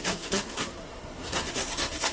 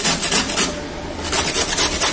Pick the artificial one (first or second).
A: first